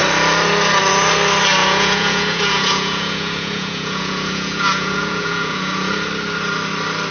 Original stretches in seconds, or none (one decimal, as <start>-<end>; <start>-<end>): 0.0-1.6; 5.9-7.1